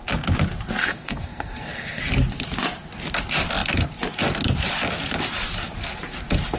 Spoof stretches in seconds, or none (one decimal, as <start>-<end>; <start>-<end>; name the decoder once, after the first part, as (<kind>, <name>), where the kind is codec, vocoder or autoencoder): 0.8-2.0 (codec, SNAC)